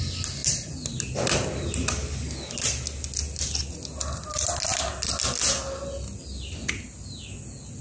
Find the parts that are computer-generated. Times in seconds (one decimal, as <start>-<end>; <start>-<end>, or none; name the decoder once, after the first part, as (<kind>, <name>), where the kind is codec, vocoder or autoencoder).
none